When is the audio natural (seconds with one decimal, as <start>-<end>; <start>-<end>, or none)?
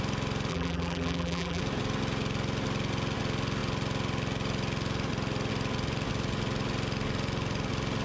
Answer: 0.0-0.5; 1.6-8.0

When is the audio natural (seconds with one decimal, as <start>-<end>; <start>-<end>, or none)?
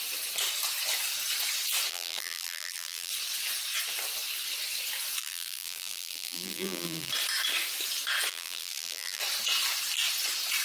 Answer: 0.0-1.9; 3.1-5.2; 7.1-8.3; 9.2-10.6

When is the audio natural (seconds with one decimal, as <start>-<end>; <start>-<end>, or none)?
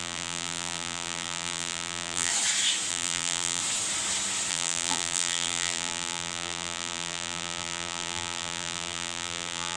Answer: 2.3-2.9; 3.6-4.5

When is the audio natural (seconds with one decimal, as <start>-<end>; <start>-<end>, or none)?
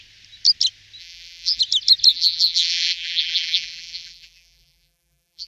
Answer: 0.0-1.0; 1.6-2.1